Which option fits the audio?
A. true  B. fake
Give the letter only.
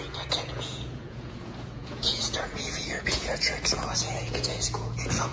B